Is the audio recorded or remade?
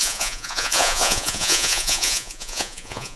remade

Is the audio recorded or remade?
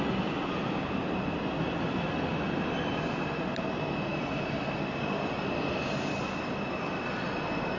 recorded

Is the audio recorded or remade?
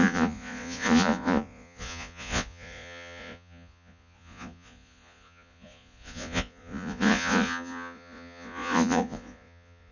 remade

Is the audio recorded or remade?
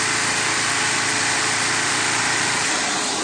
recorded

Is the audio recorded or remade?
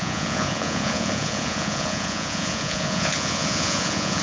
remade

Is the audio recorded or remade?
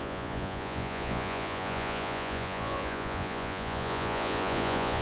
remade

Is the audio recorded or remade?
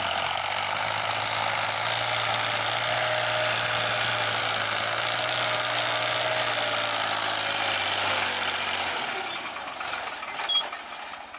recorded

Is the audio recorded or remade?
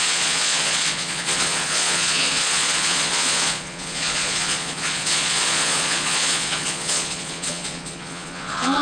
remade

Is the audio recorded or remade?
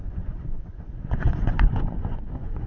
remade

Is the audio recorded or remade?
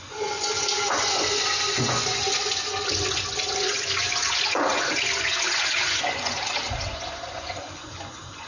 remade